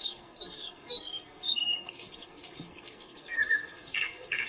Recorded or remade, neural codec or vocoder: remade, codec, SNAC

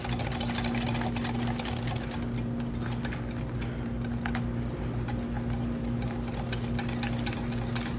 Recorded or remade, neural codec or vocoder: recorded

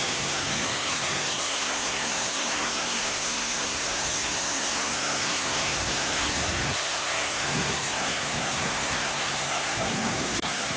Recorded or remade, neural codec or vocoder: remade, codec, SNAC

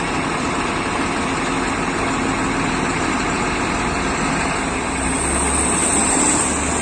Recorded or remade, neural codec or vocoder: recorded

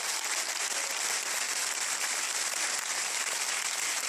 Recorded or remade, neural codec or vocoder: recorded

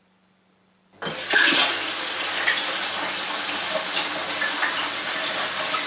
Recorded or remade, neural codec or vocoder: recorded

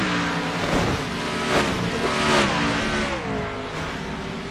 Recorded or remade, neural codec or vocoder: recorded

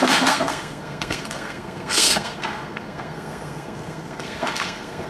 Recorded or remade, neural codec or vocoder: remade, codec, SNAC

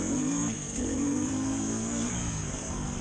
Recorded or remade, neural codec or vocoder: remade, codec, SNAC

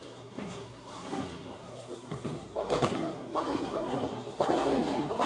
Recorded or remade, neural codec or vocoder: remade, codec, SNAC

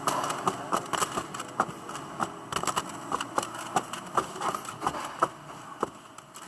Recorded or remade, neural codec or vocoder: recorded